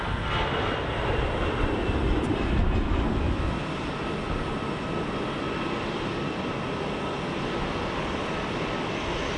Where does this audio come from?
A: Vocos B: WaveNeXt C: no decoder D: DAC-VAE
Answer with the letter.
C